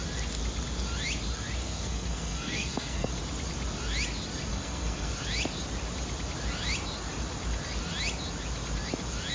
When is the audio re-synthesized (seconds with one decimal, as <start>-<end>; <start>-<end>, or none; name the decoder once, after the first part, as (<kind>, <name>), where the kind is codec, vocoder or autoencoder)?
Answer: 1.6-3.1 (codec, SNAC); 4.5-5.1